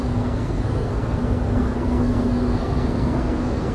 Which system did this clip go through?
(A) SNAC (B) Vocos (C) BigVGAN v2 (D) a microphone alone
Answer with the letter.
A